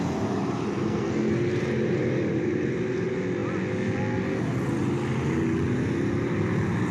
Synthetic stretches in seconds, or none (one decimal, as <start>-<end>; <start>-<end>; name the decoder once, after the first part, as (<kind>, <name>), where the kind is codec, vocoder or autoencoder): 0.7-1.3 (codec, SNAC)